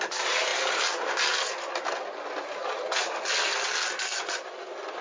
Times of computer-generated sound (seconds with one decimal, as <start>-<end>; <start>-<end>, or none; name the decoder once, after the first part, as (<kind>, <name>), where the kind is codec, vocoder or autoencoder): none